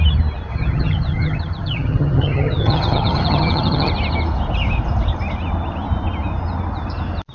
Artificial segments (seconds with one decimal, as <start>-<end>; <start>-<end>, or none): 0.5-3.9